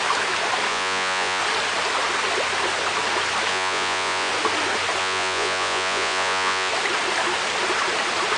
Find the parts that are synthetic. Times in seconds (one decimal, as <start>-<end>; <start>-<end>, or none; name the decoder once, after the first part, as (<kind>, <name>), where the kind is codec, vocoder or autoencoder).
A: 0.7-1.4 (vocoder, Vocos); 3.5-4.3; 5.0-6.7